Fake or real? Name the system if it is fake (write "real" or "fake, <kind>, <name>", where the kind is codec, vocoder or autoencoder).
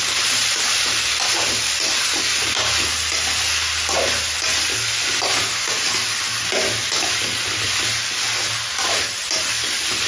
real